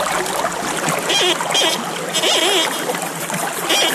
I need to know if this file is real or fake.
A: real